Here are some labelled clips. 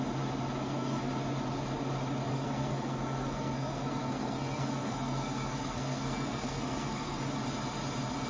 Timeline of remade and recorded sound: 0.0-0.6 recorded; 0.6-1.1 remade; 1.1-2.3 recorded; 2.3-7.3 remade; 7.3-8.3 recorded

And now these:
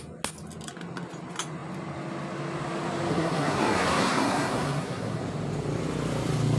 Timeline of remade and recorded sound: 0.0-3.1 recorded; 3.1-5.2 remade; 5.2-6.6 recorded

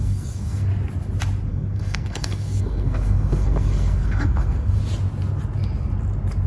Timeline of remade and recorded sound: 0.0-0.7 remade; 0.7-1.5 recorded; 1.5-4.8 remade; 4.8-6.5 recorded

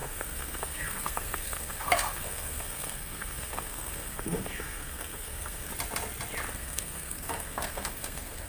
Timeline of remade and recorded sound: 0.0-5.7 remade; 5.7-6.5 recorded; 6.5-8.5 remade

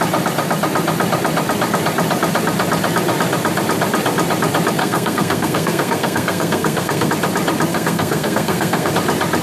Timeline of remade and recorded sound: 0.0-4.8 recorded; 4.8-7.1 remade; 7.1-7.7 recorded; 7.7-8.9 remade; 8.9-9.4 recorded

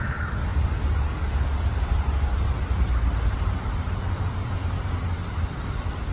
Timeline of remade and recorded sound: 0.0-6.1 recorded

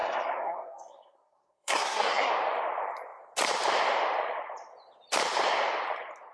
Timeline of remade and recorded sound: 0.0-2.3 remade; 2.3-6.3 recorded

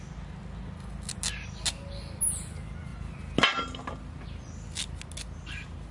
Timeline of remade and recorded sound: 0.0-5.9 recorded